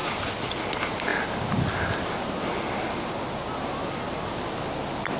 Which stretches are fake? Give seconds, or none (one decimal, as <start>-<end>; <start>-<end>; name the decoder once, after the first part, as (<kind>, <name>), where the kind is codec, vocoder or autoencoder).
none